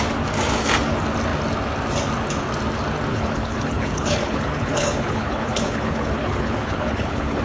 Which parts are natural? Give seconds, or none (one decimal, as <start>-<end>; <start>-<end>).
0.0-3.1